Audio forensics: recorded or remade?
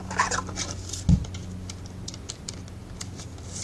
recorded